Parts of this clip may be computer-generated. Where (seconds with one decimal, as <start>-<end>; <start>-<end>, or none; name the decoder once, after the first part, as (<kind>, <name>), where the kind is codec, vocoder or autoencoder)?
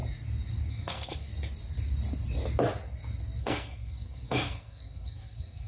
0.7-1.3 (codec, SNAC); 3.4-5.7